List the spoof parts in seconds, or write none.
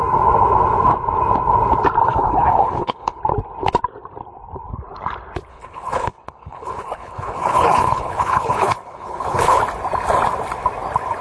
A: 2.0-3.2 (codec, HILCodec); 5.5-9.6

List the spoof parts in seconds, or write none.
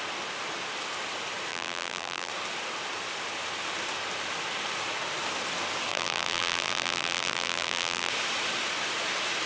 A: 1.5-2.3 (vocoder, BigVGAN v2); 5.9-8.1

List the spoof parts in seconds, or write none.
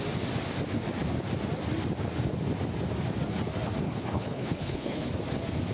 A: 3.8-5.1 (codec, HILCodec)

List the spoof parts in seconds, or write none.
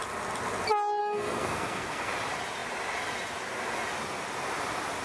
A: 1.0-2.1 (codec, SNAC)